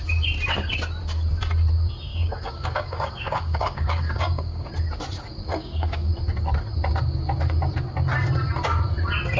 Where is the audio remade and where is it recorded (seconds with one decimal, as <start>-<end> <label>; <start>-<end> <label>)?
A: 0.0-2.1 recorded; 2.1-4.7 remade; 4.7-5.5 recorded; 5.5-6.1 remade; 6.1-9.4 recorded